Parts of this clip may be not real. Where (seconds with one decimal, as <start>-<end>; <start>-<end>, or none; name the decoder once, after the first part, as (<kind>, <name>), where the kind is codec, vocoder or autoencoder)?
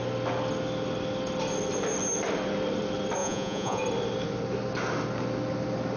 3.2-3.8 (vocoder, Vocos)